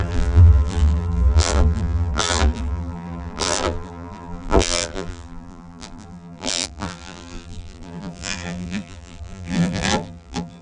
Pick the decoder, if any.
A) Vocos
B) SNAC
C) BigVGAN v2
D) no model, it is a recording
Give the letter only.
C